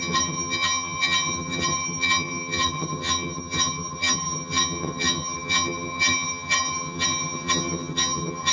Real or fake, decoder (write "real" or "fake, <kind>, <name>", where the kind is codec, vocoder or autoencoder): fake, vocoder, HiFi-GAN